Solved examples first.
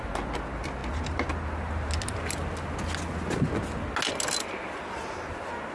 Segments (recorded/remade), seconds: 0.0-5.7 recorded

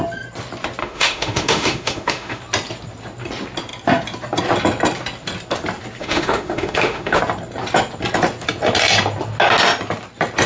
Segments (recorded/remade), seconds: 0.0-0.8 recorded; 0.8-2.4 remade; 2.4-6.0 recorded; 6.0-7.2 remade; 7.2-10.5 recorded

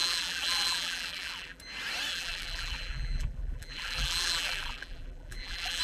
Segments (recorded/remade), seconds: 0.0-1.6 remade; 1.6-2.1 recorded; 2.1-5.8 remade

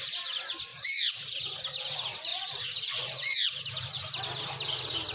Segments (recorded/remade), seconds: 0.0-0.7 recorded; 0.7-1.4 remade; 1.4-2.3 recorded; 2.3-3.6 remade; 3.6-5.1 recorded

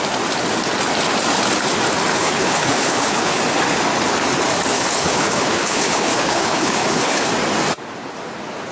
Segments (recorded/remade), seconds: 0.0-2.1 recorded; 2.1-3.4 remade; 3.4-4.7 recorded; 4.7-7.3 remade; 7.3-8.7 recorded

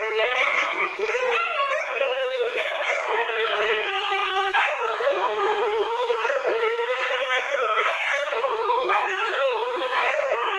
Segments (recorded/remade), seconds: 0.0-1.2 remade; 1.2-1.8 recorded; 1.8-10.6 remade

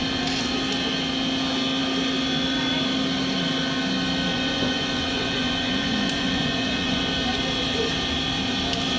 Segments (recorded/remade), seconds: 0.0-4.3 recorded; 4.3-7.0 remade; 7.0-9.0 recorded

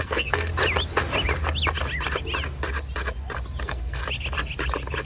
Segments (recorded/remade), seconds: 0.0-0.5 remade; 0.5-3.6 recorded; 3.6-4.0 remade; 4.0-5.1 recorded